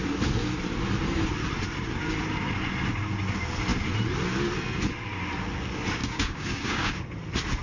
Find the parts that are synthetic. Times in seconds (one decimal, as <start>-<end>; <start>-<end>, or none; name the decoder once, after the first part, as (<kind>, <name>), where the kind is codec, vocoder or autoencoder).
6.0-7.0 (codec, DAC)